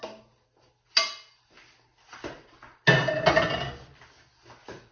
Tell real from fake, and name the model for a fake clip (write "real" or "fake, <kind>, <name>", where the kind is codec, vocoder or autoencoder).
real